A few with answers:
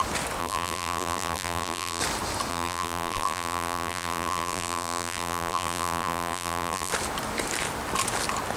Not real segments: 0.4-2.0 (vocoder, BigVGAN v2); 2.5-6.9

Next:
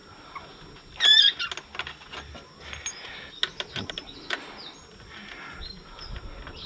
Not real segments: none

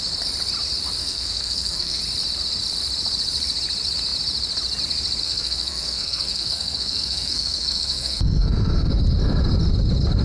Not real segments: 1.0-2.0 (codec, SNAC); 5.2-8.9

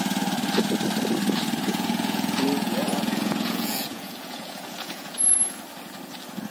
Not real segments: 1.7-5.6 (vocoder, Vocos)

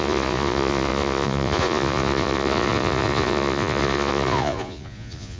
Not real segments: 0.0-5.4 (vocoder, Vocos)

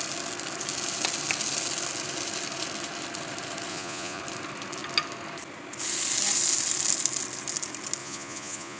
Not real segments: 3.7-4.2 (vocoder, Vocos); 8.0-8.8